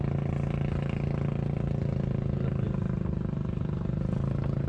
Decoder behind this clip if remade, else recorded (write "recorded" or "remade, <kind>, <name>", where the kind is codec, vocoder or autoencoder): recorded